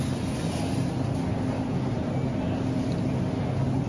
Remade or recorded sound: recorded